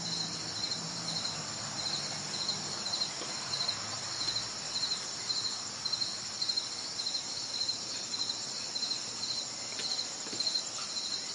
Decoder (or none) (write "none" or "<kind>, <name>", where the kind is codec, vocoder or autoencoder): none